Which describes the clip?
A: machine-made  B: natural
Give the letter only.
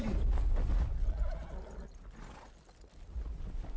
B